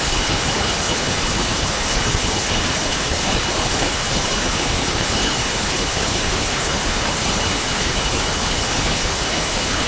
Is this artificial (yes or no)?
yes